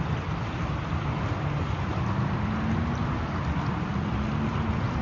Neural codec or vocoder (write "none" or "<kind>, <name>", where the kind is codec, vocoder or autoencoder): none